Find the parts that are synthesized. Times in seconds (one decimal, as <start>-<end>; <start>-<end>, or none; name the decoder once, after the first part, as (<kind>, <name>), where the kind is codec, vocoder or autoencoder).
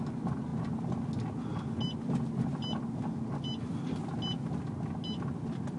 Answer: none